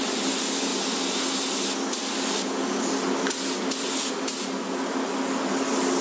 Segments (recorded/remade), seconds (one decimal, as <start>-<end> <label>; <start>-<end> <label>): 0.0-6.0 recorded